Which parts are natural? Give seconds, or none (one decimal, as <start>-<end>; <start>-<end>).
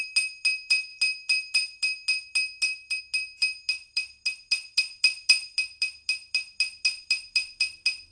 0.0-8.1